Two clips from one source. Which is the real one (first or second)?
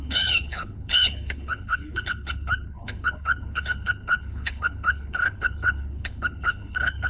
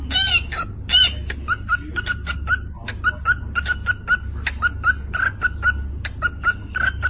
second